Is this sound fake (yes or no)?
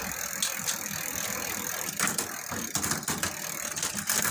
no